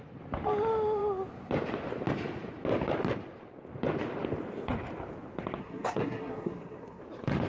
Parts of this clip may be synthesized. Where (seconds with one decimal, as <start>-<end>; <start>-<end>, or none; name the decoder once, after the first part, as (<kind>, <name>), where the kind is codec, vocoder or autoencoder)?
5.6-7.0 (codec, SNAC)